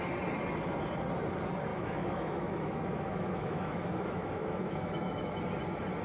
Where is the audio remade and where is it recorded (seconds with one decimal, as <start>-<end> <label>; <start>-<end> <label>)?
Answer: 0.0-1.7 recorded; 1.7-5.3 remade; 5.3-6.0 recorded